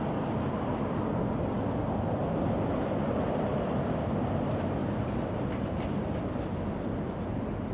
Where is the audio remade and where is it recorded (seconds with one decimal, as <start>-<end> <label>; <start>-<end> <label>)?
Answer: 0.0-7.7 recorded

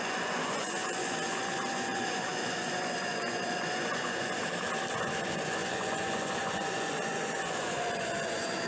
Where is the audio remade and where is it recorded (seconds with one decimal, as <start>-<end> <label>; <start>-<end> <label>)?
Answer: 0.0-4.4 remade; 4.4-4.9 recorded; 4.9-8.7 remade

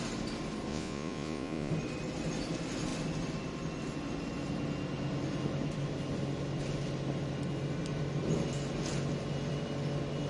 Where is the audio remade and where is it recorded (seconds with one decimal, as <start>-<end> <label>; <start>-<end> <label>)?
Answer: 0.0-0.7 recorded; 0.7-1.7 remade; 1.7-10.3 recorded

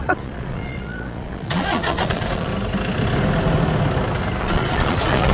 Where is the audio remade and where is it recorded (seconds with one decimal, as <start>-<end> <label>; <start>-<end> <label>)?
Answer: 0.0-2.5 remade; 2.5-4.4 recorded; 4.4-5.3 remade

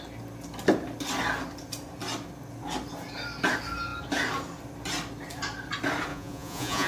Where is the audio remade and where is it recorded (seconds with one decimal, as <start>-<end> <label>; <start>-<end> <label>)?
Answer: 0.0-6.1 recorded; 6.1-6.9 remade

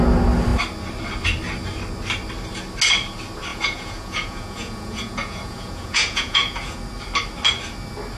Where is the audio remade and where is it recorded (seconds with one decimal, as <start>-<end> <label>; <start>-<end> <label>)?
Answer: 0.0-3.5 recorded; 3.5-6.8 remade; 6.8-8.2 recorded

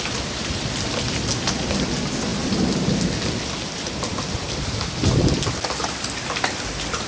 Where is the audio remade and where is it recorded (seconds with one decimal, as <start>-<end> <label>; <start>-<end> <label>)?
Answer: 0.0-7.1 recorded

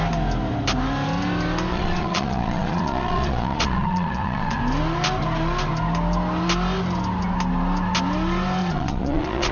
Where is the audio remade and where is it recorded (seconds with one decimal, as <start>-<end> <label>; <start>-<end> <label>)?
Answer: 0.0-1.7 recorded; 1.7-4.6 remade; 4.6-8.6 recorded; 8.6-9.5 remade